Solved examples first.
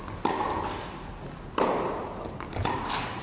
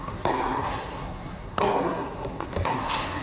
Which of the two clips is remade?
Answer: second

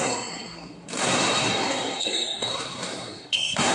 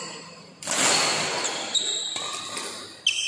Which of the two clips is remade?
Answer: first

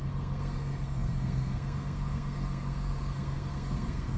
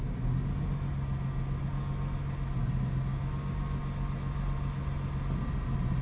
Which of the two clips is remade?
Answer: first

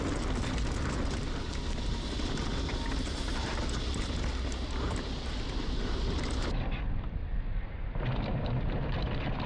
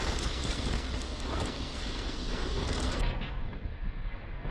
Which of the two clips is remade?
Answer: second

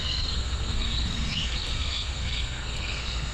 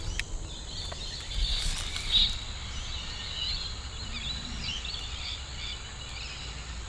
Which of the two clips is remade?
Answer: first